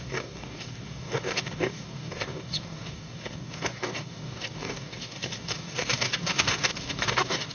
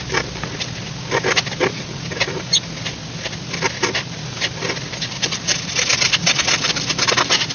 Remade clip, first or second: first